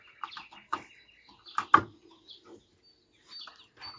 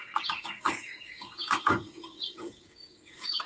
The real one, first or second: first